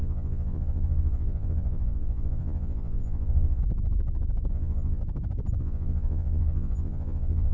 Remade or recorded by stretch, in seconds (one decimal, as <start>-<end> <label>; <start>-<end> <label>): 0.0-3.6 remade; 3.6-4.5 recorded; 4.5-5.0 remade; 5.0-5.6 recorded; 5.6-7.5 remade